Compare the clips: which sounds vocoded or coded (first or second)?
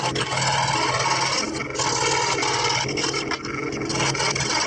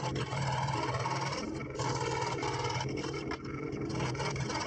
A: second